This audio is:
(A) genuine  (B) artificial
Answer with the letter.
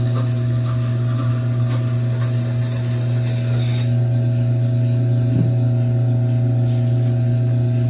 A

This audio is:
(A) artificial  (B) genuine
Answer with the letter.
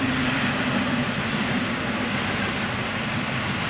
B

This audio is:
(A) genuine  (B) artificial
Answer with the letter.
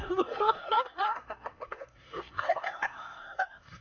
B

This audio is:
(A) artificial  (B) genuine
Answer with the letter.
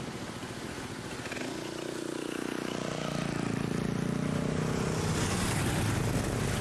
B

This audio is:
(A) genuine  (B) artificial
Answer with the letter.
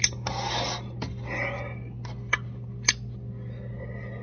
A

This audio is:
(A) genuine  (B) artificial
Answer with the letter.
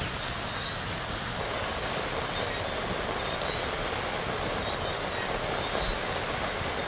A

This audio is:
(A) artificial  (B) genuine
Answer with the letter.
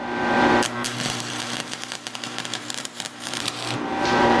A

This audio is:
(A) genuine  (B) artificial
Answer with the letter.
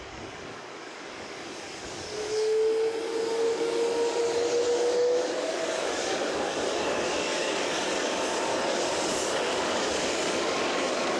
B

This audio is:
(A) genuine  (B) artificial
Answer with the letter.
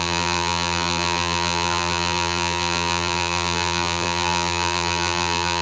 B